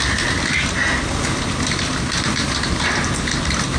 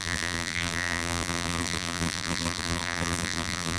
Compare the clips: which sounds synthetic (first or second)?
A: second